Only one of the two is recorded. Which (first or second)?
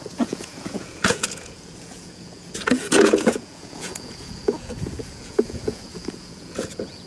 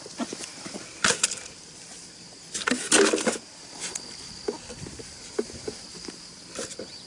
second